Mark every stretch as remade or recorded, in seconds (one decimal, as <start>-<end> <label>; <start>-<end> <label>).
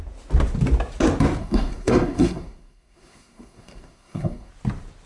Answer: 0.0-1.4 recorded; 1.4-4.5 remade; 4.5-5.1 recorded